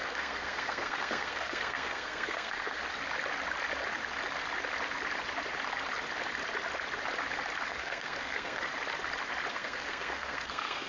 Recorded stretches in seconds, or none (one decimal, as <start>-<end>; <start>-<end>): 2.8-7.7; 8.7-9.5